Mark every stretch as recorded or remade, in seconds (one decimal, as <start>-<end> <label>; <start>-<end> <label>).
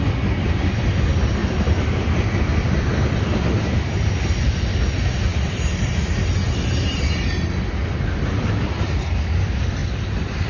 0.0-1.4 recorded; 1.4-4.3 remade; 4.3-5.3 recorded; 5.3-5.9 remade; 5.9-9.8 recorded; 9.8-10.5 remade